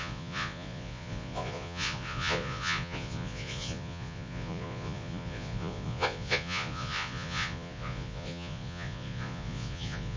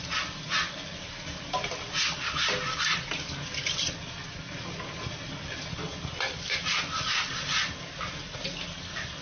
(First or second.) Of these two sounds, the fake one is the first